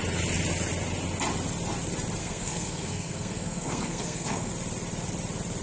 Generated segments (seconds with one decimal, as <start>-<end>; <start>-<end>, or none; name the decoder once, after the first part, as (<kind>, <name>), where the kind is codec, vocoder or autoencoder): 2.2-4.5 (codec, SNAC)